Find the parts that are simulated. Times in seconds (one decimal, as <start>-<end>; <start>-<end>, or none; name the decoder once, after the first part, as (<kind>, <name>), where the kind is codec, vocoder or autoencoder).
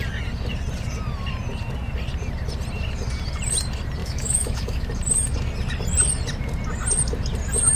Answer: 4.0-4.9 (autoencoder, DAC-VAE)